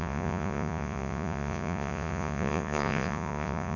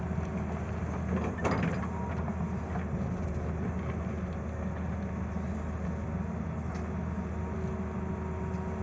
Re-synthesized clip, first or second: first